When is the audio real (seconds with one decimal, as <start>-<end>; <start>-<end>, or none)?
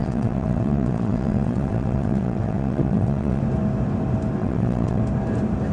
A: 3.4-4.4; 5.0-5.7